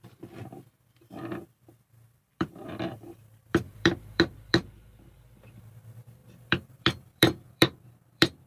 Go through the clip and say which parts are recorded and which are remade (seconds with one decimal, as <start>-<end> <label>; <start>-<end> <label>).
0.0-8.5 remade